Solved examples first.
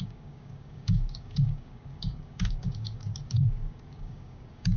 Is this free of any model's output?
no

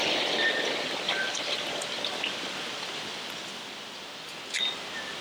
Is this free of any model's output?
yes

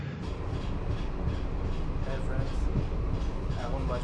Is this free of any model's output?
yes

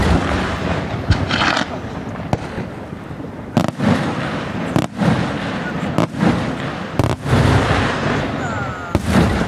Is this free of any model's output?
yes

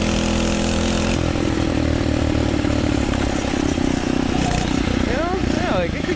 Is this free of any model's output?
yes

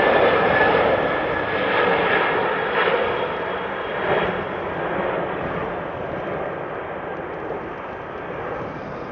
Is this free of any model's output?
yes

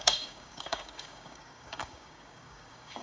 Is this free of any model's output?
no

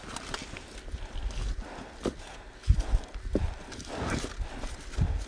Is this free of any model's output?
yes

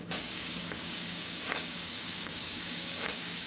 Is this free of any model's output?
no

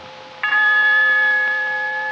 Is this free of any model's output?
yes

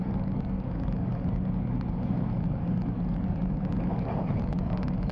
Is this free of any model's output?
no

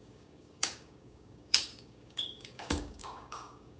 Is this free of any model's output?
no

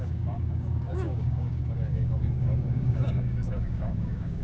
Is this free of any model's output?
no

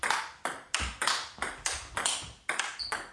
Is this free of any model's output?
yes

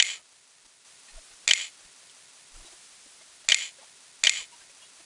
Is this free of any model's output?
yes